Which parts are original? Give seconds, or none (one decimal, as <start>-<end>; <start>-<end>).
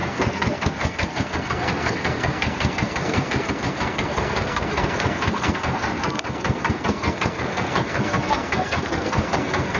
none